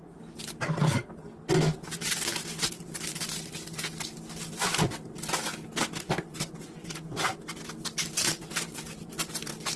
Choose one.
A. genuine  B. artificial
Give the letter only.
A